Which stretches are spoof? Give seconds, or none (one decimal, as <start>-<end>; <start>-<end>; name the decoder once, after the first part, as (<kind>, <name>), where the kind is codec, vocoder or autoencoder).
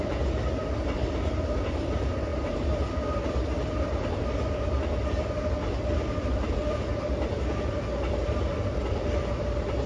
none